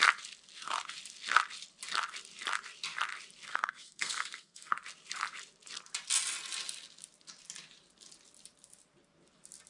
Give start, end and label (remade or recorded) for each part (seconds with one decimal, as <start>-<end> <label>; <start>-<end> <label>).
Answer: 0.0-3.5 recorded; 3.5-4.7 remade; 4.7-9.7 recorded

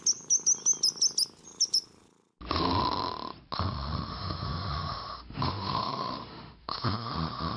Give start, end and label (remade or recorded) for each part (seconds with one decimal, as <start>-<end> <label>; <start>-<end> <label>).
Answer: 0.0-4.1 recorded; 4.1-7.1 remade; 7.1-7.6 recorded

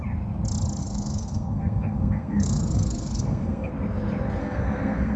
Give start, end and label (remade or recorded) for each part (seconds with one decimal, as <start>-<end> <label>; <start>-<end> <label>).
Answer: 0.0-0.8 recorded; 0.8-3.7 remade; 3.7-4.4 recorded; 4.4-5.2 remade

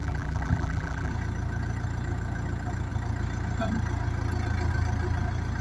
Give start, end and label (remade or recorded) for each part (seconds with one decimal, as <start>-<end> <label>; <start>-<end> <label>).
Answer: 0.0-1.1 remade; 1.1-5.6 recorded

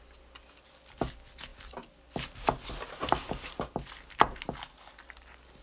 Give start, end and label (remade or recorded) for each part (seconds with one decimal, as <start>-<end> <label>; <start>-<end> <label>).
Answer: 0.0-5.6 recorded

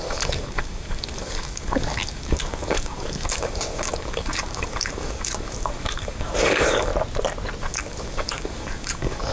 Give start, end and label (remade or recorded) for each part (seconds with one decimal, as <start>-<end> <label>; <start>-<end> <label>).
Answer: 0.0-6.9 remade; 6.9-7.6 recorded; 7.6-9.3 remade